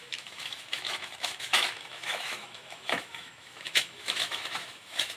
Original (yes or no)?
no